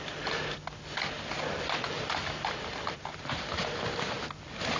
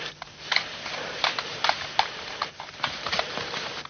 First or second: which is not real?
second